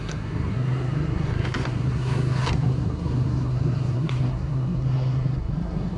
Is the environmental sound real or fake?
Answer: fake